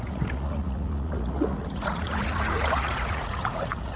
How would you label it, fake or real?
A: fake